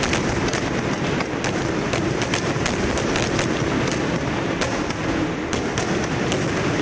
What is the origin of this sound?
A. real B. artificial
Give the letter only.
A